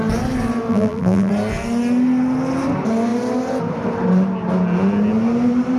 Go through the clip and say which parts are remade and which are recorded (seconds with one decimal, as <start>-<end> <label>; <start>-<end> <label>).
0.0-0.7 recorded; 0.7-1.3 remade; 1.3-5.8 recorded